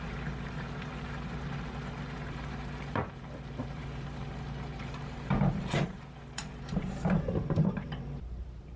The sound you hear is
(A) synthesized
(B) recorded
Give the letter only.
A